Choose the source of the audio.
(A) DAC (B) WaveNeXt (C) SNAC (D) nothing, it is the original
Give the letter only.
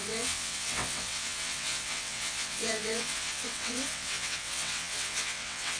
B